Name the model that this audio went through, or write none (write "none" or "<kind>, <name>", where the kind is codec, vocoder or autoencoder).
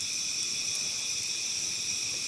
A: none